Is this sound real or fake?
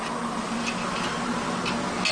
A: real